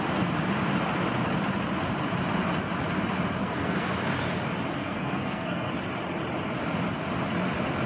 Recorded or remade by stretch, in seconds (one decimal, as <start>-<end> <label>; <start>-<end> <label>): 0.0-3.4 recorded; 3.4-3.9 remade; 3.9-4.8 recorded; 4.8-5.7 remade; 5.7-7.9 recorded